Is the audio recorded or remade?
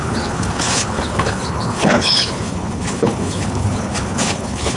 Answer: remade